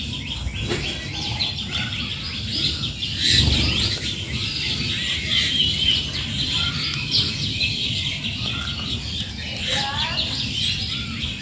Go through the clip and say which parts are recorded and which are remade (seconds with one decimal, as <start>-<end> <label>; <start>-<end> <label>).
0.0-11.4 recorded